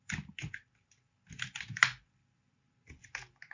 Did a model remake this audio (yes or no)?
no